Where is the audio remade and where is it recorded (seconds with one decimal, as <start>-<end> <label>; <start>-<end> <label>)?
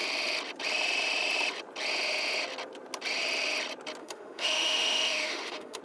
0.0-4.0 recorded; 4.0-5.8 remade